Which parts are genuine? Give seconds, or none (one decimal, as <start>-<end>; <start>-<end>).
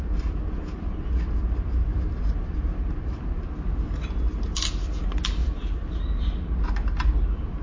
0.0-1.9; 3.5-5.4; 6.0-7.6